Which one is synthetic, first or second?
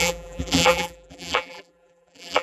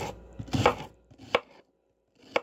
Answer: first